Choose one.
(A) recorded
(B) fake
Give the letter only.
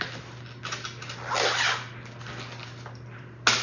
A